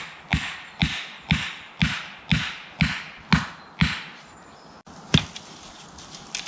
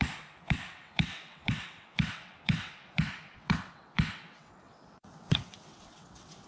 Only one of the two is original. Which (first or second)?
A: first